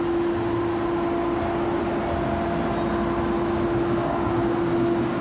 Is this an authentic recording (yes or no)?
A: yes